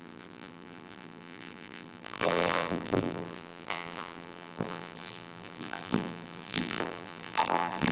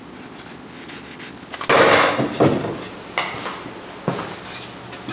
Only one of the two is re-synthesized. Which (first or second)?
first